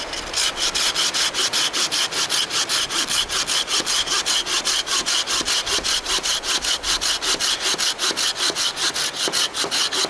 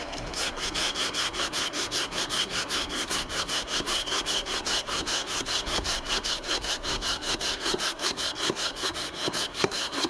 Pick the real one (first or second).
first